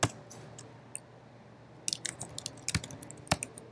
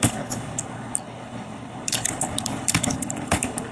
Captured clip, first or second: first